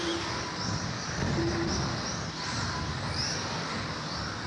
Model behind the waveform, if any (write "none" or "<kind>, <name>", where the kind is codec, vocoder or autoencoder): none